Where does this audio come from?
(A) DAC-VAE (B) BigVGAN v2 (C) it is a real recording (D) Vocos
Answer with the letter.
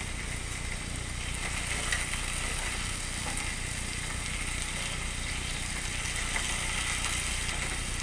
C